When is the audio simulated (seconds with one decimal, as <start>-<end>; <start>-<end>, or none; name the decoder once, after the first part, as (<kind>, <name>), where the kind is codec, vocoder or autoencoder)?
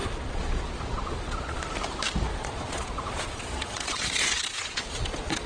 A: 0.0-1.6 (vocoder, Vocos); 2.3-5.5